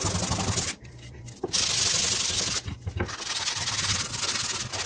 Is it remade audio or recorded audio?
recorded